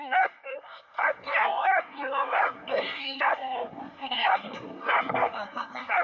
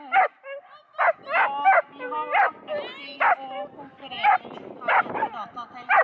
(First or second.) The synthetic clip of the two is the first